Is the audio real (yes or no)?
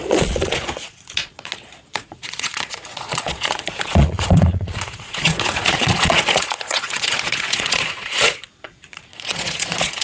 no